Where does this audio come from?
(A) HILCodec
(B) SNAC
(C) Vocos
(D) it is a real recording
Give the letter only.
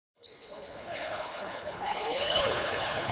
A